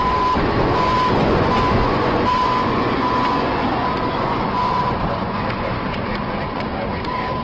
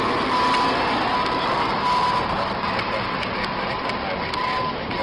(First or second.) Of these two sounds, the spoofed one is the first